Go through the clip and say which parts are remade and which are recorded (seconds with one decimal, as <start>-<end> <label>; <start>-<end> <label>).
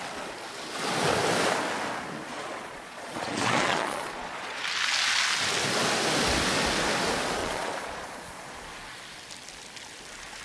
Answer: 0.0-2.3 recorded; 2.3-4.6 remade; 4.6-7.4 recorded; 7.4-8.6 remade; 8.6-10.4 recorded